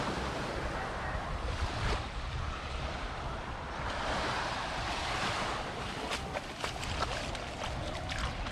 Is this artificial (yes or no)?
yes